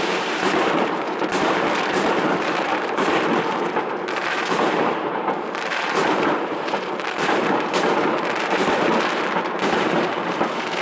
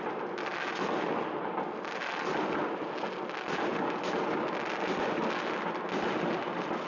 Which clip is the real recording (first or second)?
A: second